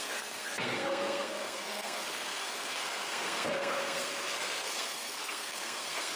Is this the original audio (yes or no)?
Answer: no